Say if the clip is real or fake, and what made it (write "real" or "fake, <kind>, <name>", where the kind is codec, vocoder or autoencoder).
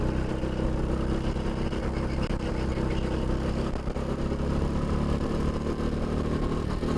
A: real